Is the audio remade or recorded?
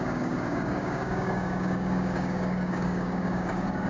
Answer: remade